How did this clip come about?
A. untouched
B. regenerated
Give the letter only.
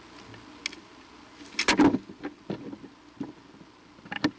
A